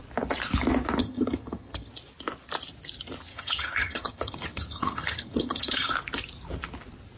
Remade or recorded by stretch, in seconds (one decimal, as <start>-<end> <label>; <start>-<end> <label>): 0.0-1.0 recorded; 1.0-1.9 remade; 1.9-3.3 recorded; 3.3-5.9 remade; 5.9-7.2 recorded